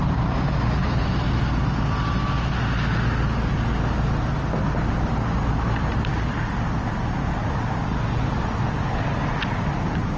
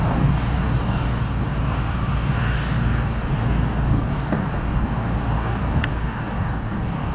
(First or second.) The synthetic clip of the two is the second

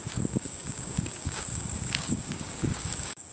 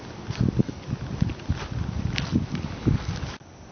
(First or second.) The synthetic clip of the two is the first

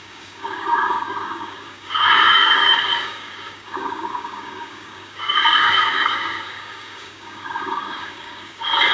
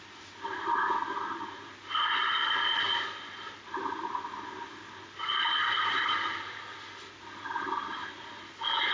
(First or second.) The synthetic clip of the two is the first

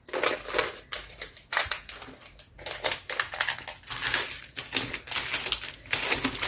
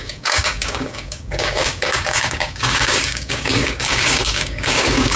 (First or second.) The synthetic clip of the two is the second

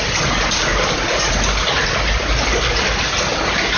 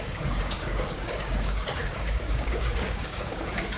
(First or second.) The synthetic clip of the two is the second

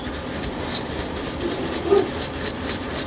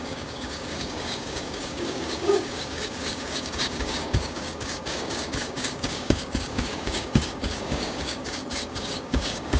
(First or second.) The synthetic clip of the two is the second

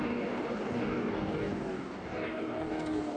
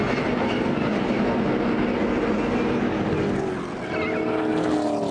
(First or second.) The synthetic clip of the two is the first